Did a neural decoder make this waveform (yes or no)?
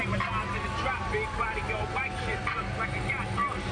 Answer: no